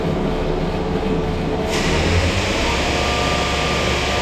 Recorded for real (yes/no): yes